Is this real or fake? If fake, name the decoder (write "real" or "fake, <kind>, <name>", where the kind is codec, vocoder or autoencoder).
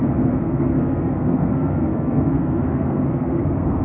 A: fake, codec, SNAC